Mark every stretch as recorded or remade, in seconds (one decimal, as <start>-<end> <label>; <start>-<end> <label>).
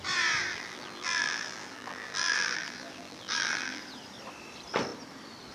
0.0-0.5 recorded; 0.5-3.8 remade; 3.8-5.5 recorded